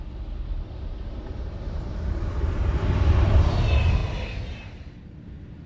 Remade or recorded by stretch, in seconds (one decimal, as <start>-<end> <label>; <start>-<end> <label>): 0.0-5.7 recorded